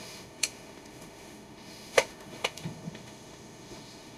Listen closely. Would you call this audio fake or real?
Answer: fake